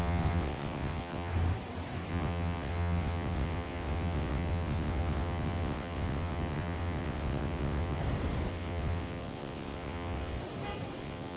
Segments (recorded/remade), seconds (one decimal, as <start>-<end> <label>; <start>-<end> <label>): 0.0-1.3 remade; 1.3-2.1 recorded; 2.1-8.0 remade; 8.0-8.5 recorded; 8.5-10.4 remade; 10.4-11.0 recorded; 11.0-11.4 remade